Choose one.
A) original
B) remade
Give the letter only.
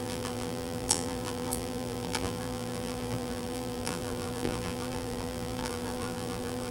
B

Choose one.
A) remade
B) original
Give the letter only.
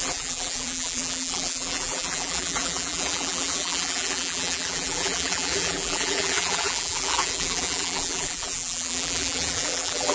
A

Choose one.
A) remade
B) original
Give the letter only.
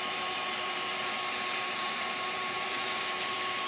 A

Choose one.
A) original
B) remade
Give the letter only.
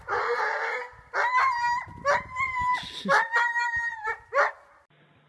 A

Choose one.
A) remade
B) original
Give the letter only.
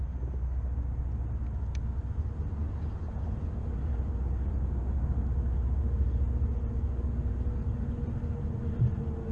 B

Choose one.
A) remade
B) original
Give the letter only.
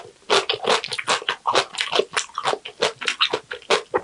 B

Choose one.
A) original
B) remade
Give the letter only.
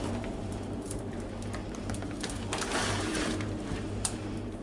B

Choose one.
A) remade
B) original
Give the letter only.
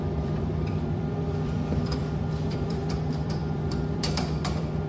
A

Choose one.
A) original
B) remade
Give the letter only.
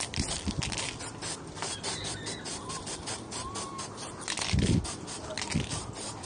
A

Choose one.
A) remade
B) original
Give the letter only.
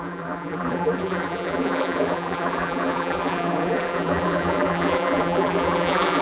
A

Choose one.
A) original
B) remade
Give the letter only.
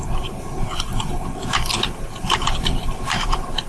A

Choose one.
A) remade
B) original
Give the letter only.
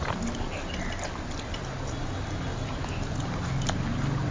B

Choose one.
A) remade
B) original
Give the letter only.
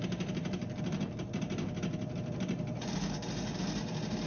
A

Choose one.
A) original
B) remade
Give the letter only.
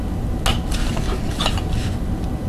A